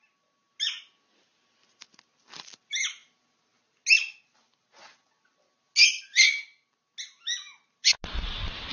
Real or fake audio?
real